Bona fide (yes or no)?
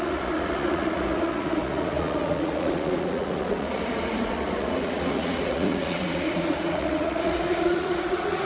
no